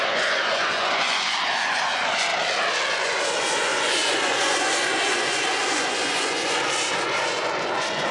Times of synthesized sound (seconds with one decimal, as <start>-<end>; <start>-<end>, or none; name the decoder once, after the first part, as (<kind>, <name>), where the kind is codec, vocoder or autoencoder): 0.0-2.3 (vocoder, Vocos); 2.9-8.1